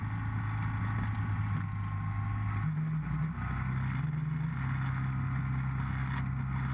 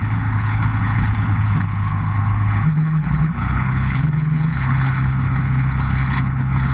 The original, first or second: first